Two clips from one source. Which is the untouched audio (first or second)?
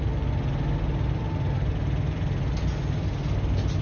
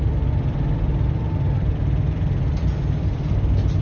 first